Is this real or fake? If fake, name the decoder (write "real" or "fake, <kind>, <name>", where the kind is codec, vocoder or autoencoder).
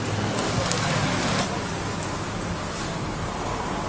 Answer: real